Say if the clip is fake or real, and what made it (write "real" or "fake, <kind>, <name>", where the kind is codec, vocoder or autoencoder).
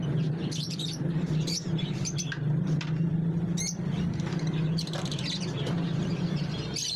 fake, vocoder, BigVGAN v2